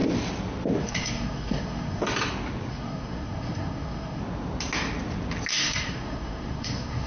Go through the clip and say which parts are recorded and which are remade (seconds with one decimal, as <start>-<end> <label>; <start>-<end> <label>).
0.0-0.8 recorded; 0.8-2.0 remade; 2.0-2.7 recorded; 2.7-4.2 remade; 4.2-5.5 recorded; 5.5-7.1 remade